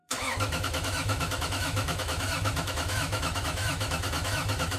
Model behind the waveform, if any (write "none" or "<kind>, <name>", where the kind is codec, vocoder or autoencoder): autoencoder, DAC-VAE